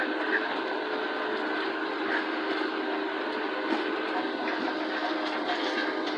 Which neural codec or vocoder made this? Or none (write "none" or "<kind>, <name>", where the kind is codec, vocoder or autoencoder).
none